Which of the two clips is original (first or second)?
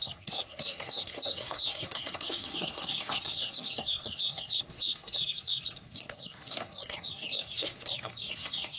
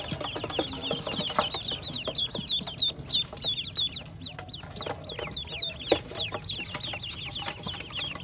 second